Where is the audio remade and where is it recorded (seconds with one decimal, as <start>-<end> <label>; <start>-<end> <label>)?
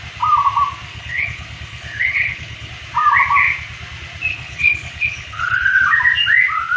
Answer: 0.0-0.9 recorded; 0.9-2.7 remade; 2.7-4.3 recorded; 4.3-5.8 remade; 5.8-6.8 recorded